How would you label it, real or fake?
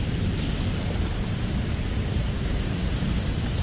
real